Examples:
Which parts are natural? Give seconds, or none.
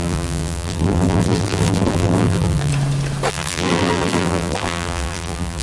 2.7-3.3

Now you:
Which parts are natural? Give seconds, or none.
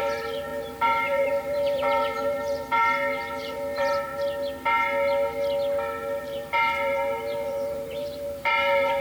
2.8-3.4; 4.1-6.2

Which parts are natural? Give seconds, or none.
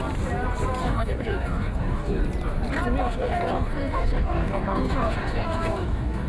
0.0-0.8; 2.2-3.0